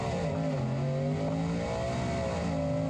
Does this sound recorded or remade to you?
recorded